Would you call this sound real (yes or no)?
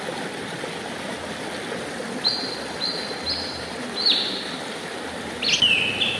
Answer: yes